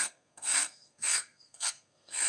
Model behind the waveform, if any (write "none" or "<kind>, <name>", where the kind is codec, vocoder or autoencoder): codec, SNAC